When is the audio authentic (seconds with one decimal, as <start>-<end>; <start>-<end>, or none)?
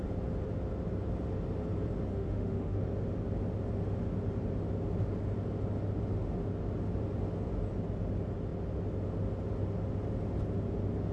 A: 0.0-2.1; 2.8-11.1